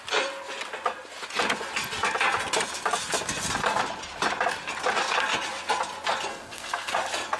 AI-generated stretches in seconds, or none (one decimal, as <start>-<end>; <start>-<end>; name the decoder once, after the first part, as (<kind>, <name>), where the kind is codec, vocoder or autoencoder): 6.3-6.9 (codec, SNAC)